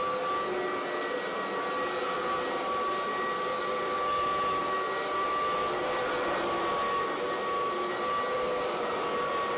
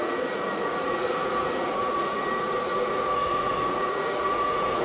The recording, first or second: first